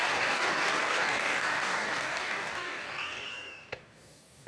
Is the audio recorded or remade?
remade